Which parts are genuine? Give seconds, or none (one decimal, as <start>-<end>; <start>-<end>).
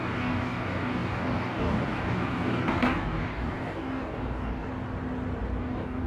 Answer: 4.7-5.6